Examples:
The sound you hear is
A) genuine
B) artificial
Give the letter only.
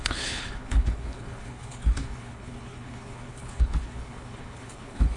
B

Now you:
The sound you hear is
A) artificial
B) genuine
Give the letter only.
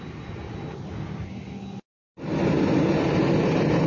B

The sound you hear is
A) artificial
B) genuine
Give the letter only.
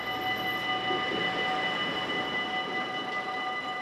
B